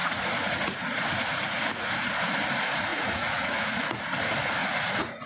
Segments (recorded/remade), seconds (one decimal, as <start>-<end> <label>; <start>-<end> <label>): 0.0-1.9 remade; 1.9-2.9 recorded; 2.9-4.0 remade; 4.0-4.6 recorded; 4.6-5.3 remade